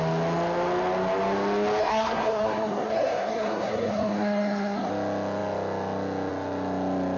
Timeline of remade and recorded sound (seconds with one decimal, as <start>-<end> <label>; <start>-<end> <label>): 0.0-1.8 recorded; 1.8-4.9 remade; 4.9-7.2 recorded